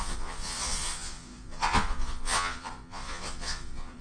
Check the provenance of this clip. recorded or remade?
remade